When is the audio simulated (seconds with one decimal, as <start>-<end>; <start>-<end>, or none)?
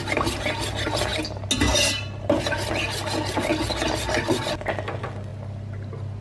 none